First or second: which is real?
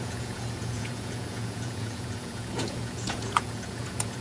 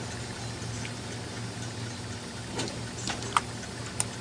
second